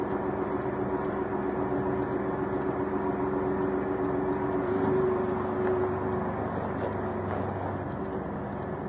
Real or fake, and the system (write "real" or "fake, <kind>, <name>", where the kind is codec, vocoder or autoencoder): real